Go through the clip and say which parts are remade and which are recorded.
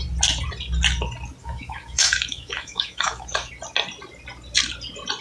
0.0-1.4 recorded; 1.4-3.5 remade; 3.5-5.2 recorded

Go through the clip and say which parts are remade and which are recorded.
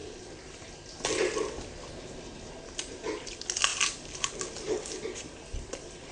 0.0-0.7 remade; 0.7-3.7 recorded; 3.7-4.3 remade; 4.3-5.5 recorded; 5.5-6.1 remade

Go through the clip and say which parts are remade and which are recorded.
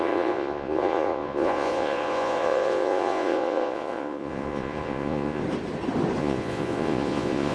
0.0-5.4 remade; 5.4-6.2 recorded; 6.2-7.5 remade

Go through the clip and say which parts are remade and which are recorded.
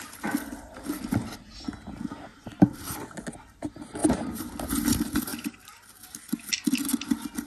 0.0-2.3 recorded; 2.3-3.0 remade; 3.0-4.0 recorded; 4.0-4.5 remade; 4.5-7.5 recorded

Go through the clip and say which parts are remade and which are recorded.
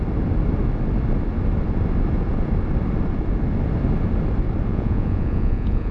0.0-4.7 recorded; 4.7-5.9 remade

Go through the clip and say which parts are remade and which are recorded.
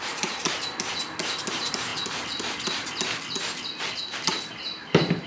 0.0-0.6 remade; 0.6-1.4 recorded; 1.4-1.9 remade; 1.9-5.3 recorded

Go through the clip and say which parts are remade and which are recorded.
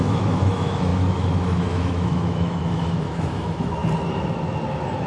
0.0-3.8 remade; 3.8-5.1 recorded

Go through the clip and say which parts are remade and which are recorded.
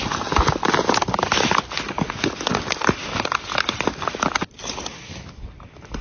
0.0-6.0 recorded